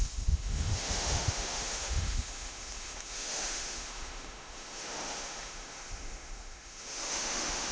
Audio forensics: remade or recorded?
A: remade